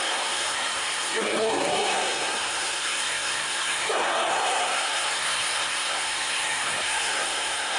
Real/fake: fake